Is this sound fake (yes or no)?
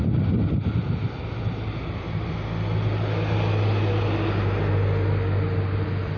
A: no